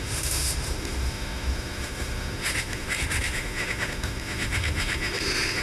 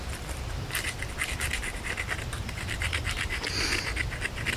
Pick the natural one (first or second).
second